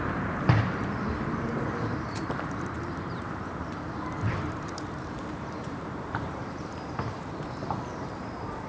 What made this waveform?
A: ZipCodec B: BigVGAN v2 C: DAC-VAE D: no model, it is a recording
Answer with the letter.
B